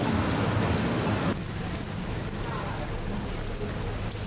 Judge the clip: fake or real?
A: real